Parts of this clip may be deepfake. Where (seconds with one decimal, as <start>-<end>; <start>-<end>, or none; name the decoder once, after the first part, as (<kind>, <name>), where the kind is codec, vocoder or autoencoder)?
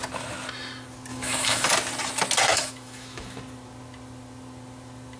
1.1-1.7 (autoencoder, DAC-VAE); 2.5-3.4